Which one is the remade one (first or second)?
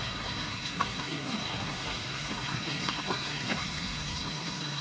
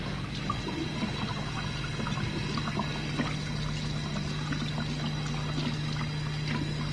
first